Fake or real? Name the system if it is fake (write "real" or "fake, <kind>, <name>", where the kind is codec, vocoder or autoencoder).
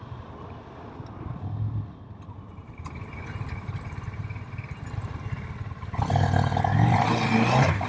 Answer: real